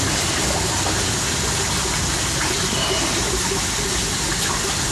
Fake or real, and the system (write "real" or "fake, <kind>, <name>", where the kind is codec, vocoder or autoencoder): real